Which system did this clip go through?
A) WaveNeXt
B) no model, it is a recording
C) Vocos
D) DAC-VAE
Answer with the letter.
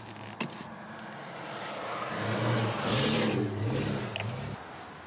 B